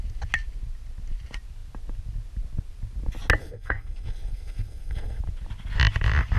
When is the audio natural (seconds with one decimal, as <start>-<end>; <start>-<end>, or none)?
0.0-3.4; 5.2-6.4